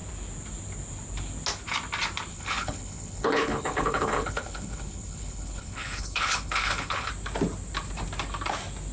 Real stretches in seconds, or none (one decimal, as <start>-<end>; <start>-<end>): 0.0-2.3; 7.1-8.9